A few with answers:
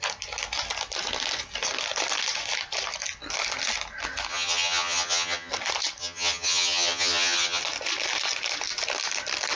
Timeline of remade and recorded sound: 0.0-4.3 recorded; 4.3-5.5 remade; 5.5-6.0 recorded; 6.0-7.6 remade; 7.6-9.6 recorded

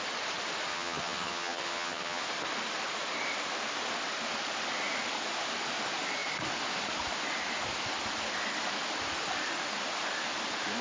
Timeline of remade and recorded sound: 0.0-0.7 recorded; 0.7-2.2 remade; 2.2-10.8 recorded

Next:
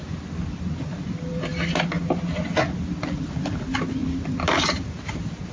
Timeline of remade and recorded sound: 0.0-5.5 recorded

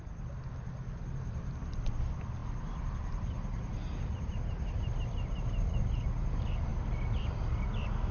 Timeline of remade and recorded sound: 0.0-8.1 recorded

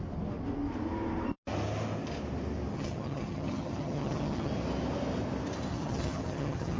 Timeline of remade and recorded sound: 0.0-2.7 recorded; 2.7-4.5 remade; 4.5-5.7 recorded; 5.7-6.8 remade

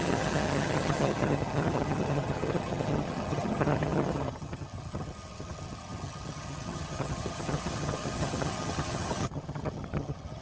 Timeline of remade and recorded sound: 0.0-10.4 remade